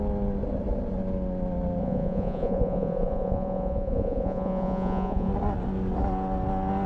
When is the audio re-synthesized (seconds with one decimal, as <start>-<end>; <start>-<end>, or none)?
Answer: 1.8-5.3